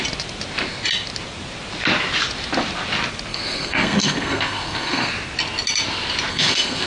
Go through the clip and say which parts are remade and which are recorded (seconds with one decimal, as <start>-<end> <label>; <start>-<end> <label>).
0.0-3.3 recorded; 3.3-5.1 remade; 5.1-6.3 recorded; 6.3-6.9 remade

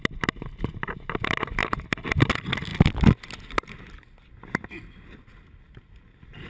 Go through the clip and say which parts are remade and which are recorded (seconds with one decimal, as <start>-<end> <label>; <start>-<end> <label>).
0.0-6.5 recorded

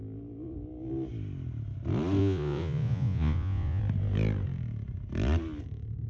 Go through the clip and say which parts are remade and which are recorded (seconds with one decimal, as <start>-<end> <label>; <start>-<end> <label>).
0.0-2.2 recorded; 2.2-3.8 remade; 3.8-6.1 recorded

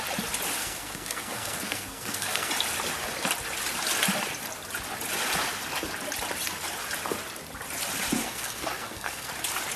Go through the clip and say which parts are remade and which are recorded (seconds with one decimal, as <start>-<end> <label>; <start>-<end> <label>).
0.0-0.6 recorded; 0.6-2.5 remade; 2.5-8.2 recorded; 8.2-9.3 remade; 9.3-9.8 recorded

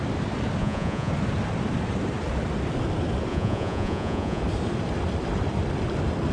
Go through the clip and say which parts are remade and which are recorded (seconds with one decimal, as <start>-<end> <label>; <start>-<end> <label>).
0.0-0.6 recorded; 0.6-1.1 remade; 1.1-3.3 recorded; 3.3-4.4 remade; 4.4-6.3 recorded

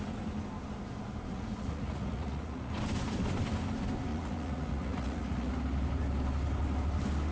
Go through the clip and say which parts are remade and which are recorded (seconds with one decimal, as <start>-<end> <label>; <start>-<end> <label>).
0.0-1.3 recorded; 1.3-2.7 remade; 2.7-4.1 recorded; 4.1-5.5 remade; 5.5-7.3 recorded

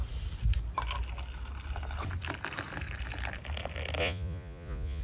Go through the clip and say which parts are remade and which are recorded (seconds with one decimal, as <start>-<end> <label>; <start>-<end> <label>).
0.0-4.0 recorded; 4.0-5.0 remade